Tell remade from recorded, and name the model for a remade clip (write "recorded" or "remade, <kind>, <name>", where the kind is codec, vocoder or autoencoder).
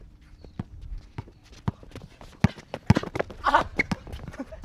recorded